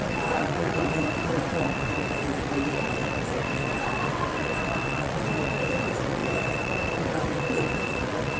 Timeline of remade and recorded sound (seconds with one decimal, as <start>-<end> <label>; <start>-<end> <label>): 0.0-8.4 remade